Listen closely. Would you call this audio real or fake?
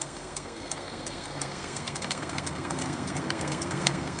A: fake